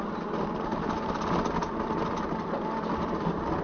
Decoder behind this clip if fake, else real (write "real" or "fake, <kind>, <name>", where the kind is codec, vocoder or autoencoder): real